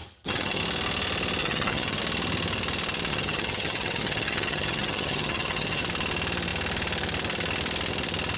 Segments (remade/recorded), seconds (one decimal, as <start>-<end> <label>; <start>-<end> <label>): 0.0-0.6 remade; 0.6-1.4 recorded; 1.4-2.0 remade; 2.0-3.1 recorded; 3.1-5.8 remade; 5.8-8.4 recorded